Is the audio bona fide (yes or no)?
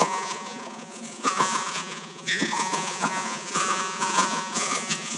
no